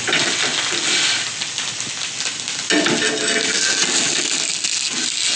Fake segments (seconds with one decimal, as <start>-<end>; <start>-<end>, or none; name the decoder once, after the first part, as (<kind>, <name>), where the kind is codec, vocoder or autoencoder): none